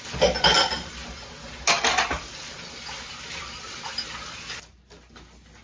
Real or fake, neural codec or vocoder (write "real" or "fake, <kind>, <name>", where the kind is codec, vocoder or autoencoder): real